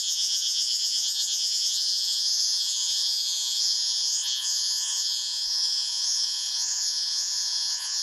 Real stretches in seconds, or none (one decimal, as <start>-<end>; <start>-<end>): none

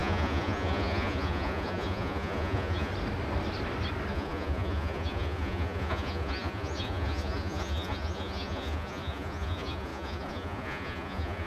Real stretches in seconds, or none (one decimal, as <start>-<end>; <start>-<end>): 2.9-4.1

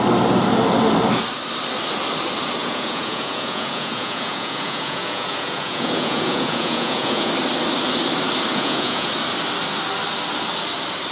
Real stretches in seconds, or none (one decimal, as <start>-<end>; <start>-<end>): 0.0-2.6; 7.3-8.5; 9.1-11.1

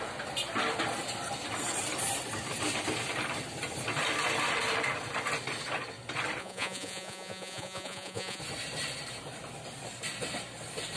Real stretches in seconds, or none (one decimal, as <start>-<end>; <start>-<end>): 0.0-6.4; 8.4-11.0

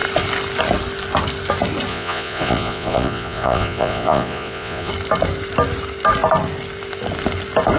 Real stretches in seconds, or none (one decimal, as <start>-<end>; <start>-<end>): 0.0-1.9; 4.9-7.8

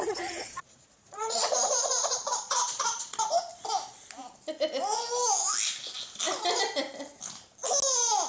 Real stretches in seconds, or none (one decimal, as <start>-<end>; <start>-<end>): 3.5-8.3